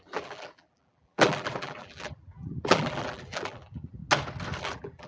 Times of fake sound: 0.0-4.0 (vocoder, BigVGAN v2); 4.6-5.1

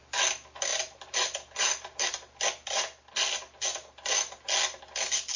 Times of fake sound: none